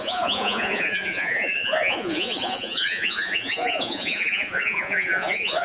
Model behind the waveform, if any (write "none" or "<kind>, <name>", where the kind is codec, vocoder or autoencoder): vocoder, Vocos